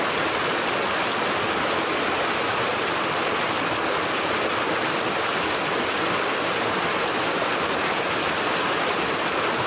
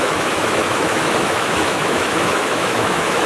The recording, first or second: first